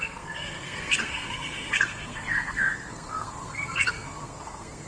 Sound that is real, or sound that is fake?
fake